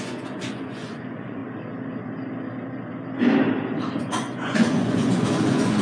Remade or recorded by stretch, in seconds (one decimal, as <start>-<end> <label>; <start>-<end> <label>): 0.0-1.4 remade; 1.4-4.0 recorded; 4.0-5.8 remade